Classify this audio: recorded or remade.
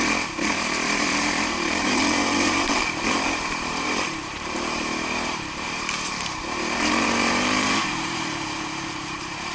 remade